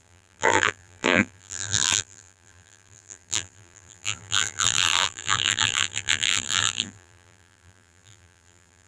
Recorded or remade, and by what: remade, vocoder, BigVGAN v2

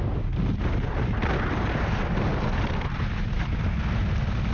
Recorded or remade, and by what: recorded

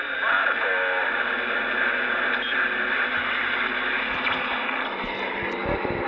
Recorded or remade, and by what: recorded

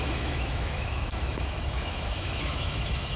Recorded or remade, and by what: remade, autoencoder, DAC-VAE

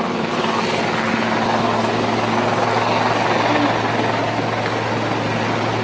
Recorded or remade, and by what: recorded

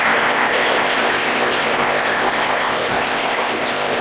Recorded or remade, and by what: remade, codec, ZipCodec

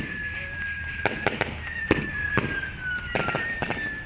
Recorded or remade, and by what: recorded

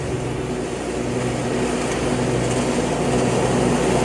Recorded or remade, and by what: recorded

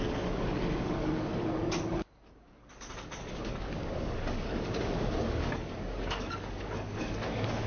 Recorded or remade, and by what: remade, codec, DAC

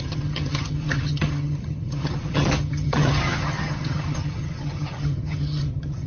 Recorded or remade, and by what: remade, vocoder, HiFi-GAN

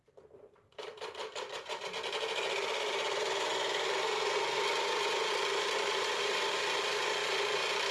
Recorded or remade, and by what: remade, vocoder, BigVGAN v2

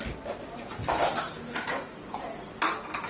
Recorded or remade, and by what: recorded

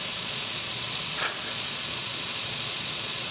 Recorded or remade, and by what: remade, vocoder, Vocos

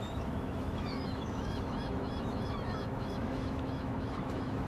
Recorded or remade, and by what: remade, autoencoder, DAC-VAE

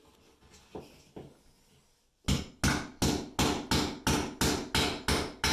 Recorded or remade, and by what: recorded